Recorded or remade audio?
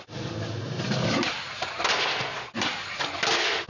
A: recorded